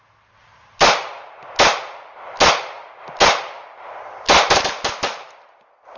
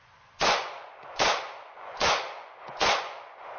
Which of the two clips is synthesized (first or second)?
second